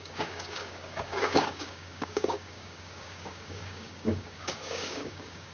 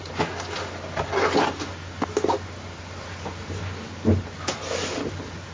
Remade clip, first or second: first